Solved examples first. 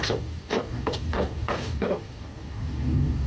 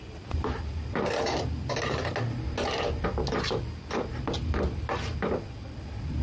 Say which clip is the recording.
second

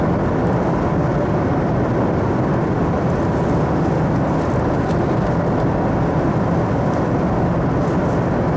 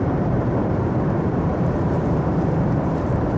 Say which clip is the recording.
first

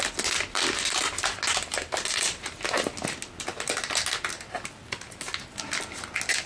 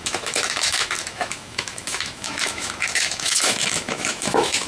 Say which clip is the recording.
first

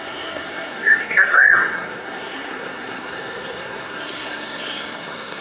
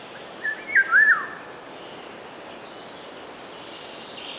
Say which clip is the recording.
second